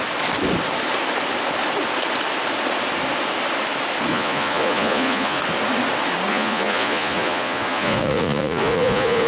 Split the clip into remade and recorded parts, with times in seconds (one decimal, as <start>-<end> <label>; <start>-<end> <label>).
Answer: 0.0-4.1 recorded; 4.1-5.4 remade; 5.4-6.3 recorded; 6.3-9.3 remade